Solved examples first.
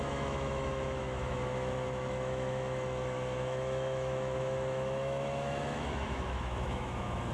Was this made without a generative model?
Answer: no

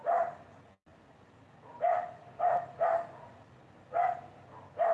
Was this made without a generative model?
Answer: yes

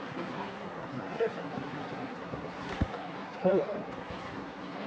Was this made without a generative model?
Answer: no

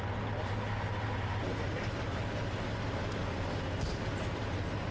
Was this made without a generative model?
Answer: yes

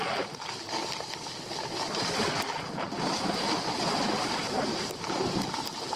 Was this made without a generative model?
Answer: no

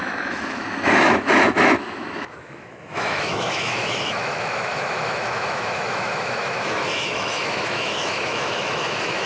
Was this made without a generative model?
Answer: no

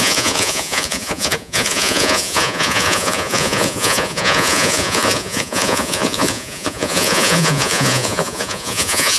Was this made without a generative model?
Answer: no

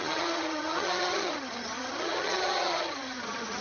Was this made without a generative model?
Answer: no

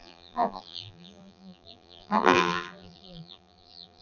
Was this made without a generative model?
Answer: no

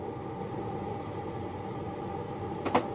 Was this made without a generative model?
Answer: yes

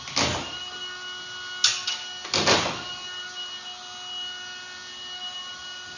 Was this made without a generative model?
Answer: yes